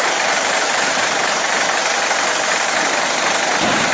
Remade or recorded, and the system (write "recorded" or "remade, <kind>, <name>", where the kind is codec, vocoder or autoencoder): remade, vocoder, BigVGAN v2